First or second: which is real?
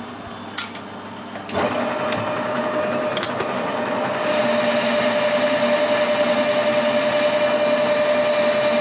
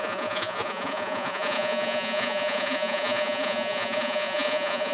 first